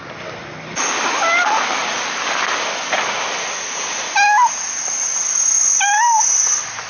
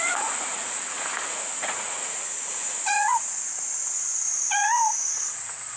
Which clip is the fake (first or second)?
second